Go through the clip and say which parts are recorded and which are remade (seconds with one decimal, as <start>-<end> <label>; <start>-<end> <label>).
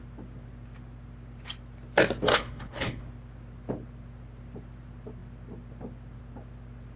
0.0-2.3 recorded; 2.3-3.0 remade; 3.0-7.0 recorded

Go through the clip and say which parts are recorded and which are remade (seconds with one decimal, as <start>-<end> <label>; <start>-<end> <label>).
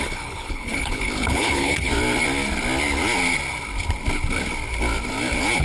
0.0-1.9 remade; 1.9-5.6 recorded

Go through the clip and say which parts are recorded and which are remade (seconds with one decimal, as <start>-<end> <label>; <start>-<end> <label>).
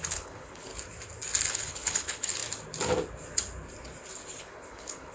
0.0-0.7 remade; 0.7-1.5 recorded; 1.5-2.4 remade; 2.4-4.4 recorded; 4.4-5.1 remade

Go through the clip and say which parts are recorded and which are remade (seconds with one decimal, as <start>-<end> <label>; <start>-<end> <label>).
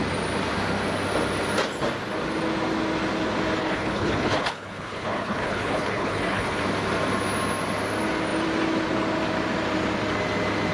0.0-3.6 recorded; 3.6-6.6 remade; 6.6-10.7 recorded